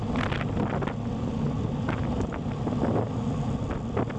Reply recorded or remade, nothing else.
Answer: recorded